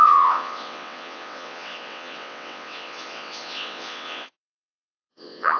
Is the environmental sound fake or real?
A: fake